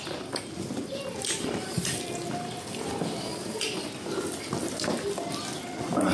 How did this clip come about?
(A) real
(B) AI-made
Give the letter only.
A